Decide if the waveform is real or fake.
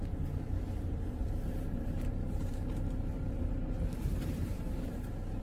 fake